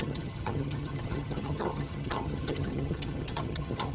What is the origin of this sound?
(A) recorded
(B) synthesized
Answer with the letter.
B